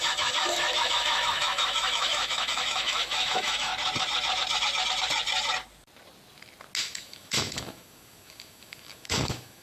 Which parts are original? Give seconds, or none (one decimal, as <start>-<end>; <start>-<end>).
3.7-6.8